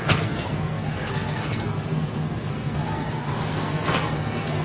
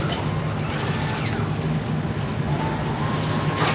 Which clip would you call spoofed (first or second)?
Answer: first